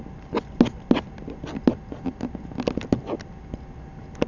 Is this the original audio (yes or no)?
yes